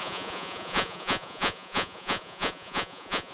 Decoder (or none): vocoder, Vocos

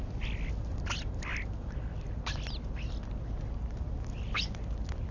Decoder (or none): none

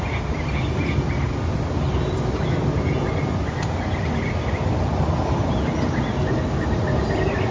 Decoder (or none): none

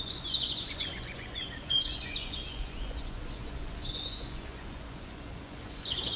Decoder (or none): vocoder, Vocos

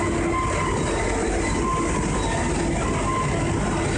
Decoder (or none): none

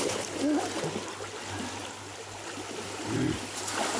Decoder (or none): none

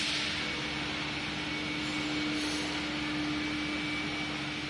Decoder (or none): none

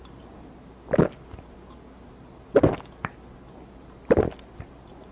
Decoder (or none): none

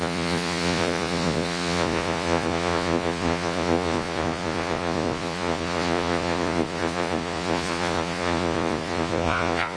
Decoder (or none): vocoder, Vocos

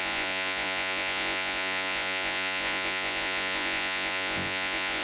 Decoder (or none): vocoder, Vocos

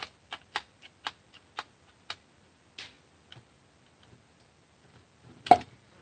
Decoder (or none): none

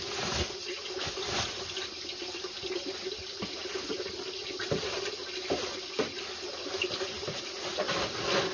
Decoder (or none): none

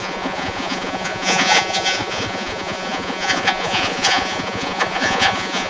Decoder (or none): vocoder, Vocos